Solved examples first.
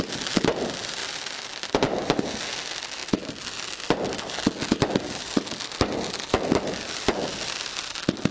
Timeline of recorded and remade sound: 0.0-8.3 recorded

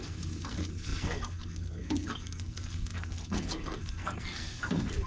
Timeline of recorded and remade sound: 0.0-5.1 remade

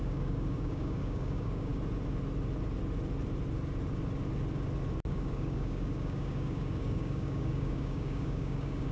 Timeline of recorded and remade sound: 0.0-1.7 remade; 1.7-5.1 recorded; 5.1-8.9 remade

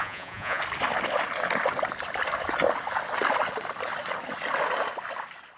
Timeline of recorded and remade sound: 0.0-0.6 remade; 0.6-5.6 recorded

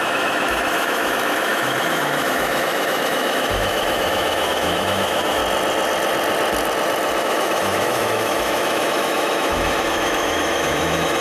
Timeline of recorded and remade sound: 0.0-5.4 remade; 5.4-7.2 recorded; 7.2-11.2 remade